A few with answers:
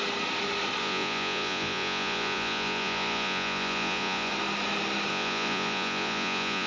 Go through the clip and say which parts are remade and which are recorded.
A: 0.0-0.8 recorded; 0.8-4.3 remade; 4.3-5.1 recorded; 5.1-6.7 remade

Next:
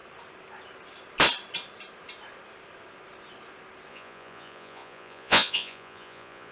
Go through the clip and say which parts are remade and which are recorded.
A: 0.0-3.9 recorded; 3.9-6.5 remade

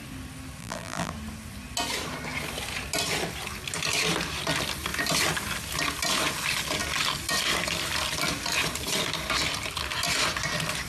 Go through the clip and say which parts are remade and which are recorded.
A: 0.0-0.6 recorded; 0.6-1.1 remade; 1.1-10.9 recorded